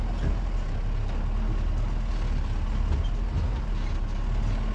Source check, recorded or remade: recorded